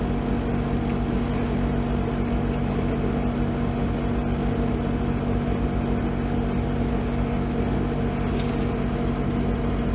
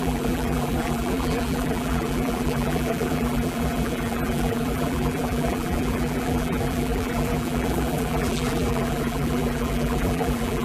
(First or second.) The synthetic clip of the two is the second